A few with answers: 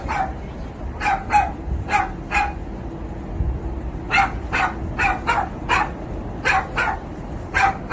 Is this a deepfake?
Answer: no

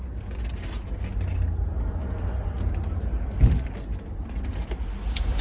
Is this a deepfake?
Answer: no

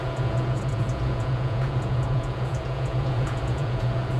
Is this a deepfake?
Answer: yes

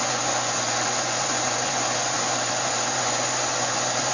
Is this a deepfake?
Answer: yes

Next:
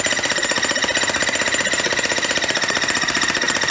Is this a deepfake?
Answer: no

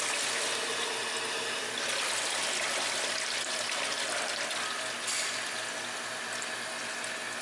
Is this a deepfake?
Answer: no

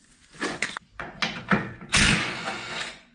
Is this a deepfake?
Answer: yes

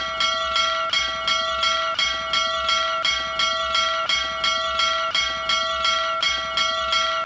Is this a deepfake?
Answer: no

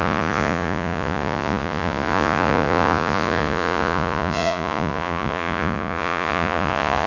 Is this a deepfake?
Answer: yes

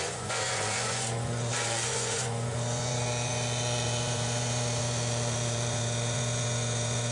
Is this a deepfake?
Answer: yes